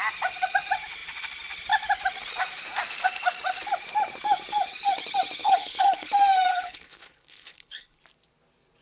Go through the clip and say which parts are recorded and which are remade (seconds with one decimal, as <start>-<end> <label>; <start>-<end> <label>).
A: 0.0-5.4 recorded; 5.4-6.1 remade; 6.1-6.5 recorded; 6.5-8.0 remade; 8.0-8.8 recorded